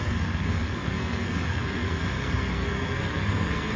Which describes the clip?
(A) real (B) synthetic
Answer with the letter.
B